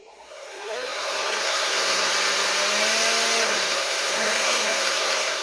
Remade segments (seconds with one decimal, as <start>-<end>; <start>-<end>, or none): 0.0-2.1; 3.4-5.4

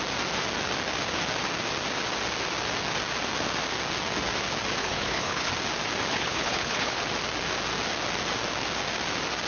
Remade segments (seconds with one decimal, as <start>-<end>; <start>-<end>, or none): 4.8-5.5; 6.1-7.0

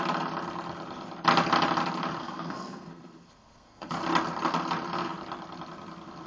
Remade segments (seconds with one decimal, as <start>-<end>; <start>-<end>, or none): 2.2-3.9

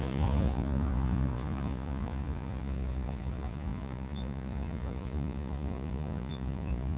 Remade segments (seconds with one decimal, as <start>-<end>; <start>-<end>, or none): 0.0-7.0

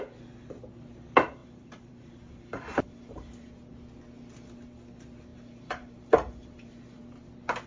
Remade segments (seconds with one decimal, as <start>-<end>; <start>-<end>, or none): 1.4-3.5; 5.3-7.0

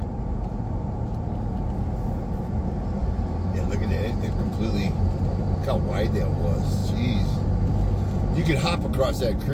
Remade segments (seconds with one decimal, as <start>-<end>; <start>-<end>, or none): 0.0-1.3; 3.0-5.7

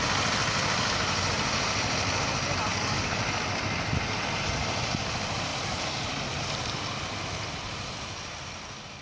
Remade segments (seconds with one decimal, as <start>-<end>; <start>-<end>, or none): 2.7-3.2